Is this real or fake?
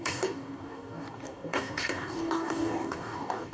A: fake